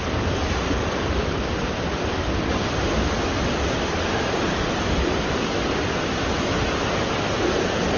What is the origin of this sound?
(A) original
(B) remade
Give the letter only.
A